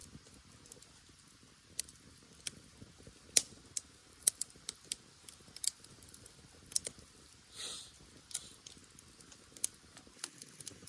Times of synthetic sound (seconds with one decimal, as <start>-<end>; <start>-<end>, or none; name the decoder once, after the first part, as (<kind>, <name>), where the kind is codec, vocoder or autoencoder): 4.0-6.3 (vocoder, BigVGAN v2)